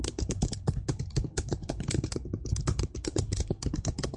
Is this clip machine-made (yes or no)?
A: yes